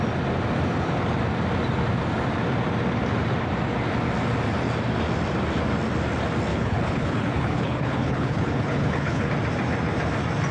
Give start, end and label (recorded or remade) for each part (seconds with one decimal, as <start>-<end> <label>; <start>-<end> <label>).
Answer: 0.0-6.5 recorded; 6.5-9.3 remade; 9.3-10.5 recorded